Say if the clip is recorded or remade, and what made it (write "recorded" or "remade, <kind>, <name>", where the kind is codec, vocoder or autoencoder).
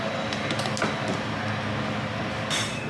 recorded